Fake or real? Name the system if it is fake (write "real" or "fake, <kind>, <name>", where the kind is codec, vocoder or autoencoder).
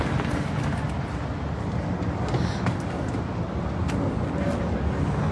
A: real